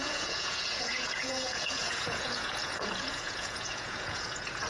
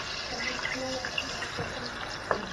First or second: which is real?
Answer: second